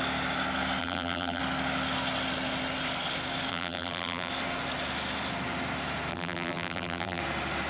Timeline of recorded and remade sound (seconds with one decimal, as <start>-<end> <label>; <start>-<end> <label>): 0.0-0.8 recorded; 0.8-1.4 remade; 1.4-3.5 recorded; 3.5-4.3 remade; 4.3-6.1 recorded; 6.1-7.2 remade; 7.2-7.7 recorded